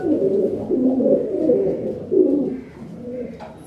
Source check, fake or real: real